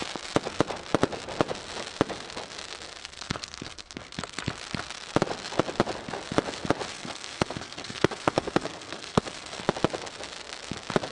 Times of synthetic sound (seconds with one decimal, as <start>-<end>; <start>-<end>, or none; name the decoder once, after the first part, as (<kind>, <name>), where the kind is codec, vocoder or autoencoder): 3.0-4.5 (codec, SNAC); 6.9-9.6